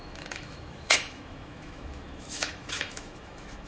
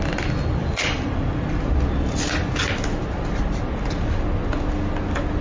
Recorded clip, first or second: second